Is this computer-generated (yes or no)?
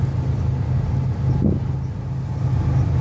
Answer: no